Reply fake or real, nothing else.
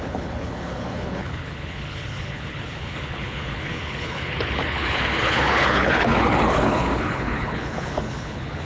fake